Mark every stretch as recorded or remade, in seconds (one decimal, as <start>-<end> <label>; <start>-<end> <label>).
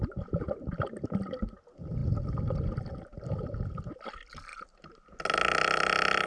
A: 0.0-6.3 recorded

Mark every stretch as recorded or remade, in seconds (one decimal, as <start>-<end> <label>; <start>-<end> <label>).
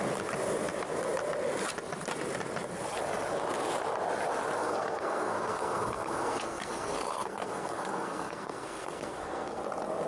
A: 0.0-4.6 recorded; 4.6-9.6 remade; 9.6-10.1 recorded